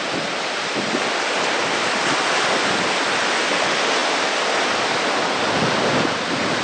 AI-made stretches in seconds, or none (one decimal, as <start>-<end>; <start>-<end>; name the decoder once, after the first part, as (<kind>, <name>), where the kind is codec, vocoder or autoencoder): 4.0-5.1 (vocoder, BigVGAN v2)